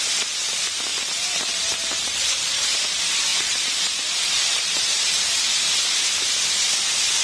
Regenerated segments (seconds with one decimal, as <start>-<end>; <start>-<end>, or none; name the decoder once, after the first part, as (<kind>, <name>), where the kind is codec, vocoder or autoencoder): 0.9-2.8 (vocoder, BigVGAN v2); 3.3-5.8